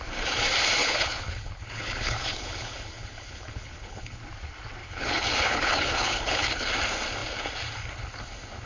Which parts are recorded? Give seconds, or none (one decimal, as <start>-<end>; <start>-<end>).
0.0-0.8; 4.2-4.8; 6.7-8.7